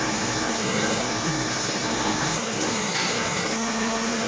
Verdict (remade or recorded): remade